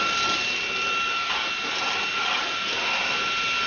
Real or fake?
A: real